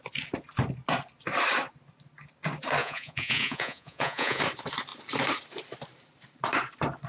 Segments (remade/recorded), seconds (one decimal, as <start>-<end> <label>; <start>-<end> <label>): 0.0-2.8 recorded; 2.8-4.4 remade; 4.4-7.1 recorded